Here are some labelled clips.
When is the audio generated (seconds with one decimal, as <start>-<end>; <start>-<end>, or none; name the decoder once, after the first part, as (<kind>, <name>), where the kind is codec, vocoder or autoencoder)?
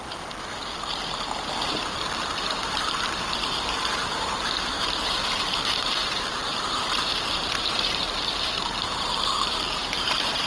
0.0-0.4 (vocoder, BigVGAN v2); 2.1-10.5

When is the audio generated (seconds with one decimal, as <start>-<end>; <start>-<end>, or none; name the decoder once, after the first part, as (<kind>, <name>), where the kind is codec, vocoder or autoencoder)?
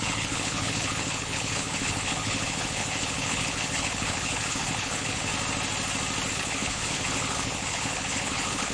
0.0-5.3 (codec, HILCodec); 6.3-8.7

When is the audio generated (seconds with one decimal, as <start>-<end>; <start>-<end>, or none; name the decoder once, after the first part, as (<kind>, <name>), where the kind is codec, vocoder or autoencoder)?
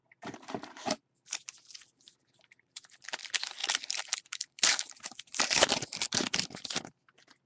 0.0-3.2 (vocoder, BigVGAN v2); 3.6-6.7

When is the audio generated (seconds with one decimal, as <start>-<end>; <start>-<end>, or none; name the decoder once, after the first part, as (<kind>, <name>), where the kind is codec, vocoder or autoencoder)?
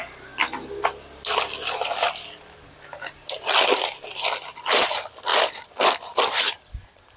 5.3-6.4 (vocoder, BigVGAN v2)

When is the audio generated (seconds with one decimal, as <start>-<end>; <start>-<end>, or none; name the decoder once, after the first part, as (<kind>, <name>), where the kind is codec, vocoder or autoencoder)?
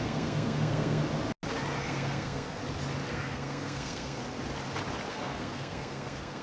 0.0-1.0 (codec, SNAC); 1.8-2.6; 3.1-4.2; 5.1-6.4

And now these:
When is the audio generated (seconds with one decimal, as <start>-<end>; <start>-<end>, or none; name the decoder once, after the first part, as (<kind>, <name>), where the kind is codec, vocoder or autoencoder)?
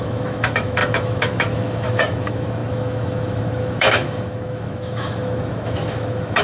0.0-6.4 (autoencoder, DAC-VAE)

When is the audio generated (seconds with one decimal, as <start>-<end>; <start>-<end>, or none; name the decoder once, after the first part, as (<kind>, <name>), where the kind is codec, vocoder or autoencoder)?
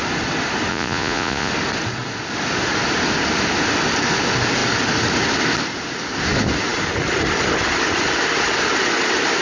0.7-1.5 (vocoder, Vocos)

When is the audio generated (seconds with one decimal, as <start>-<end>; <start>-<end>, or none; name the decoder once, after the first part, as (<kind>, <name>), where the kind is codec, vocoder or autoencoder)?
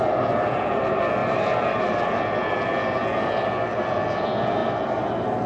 none